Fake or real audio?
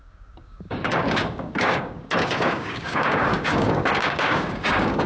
fake